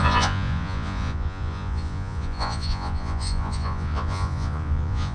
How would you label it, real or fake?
fake